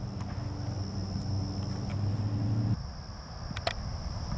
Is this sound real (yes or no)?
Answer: yes